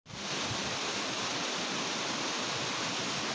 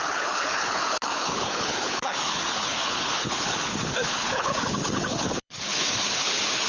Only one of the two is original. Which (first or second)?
first